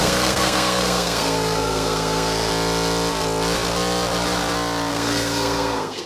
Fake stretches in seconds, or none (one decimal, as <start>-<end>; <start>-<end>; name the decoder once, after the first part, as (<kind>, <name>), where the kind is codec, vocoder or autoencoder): 0.0-2.5 (codec, SNAC); 4.9-6.1